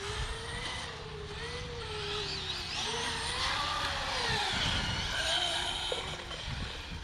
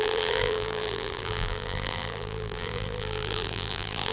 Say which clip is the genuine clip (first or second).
first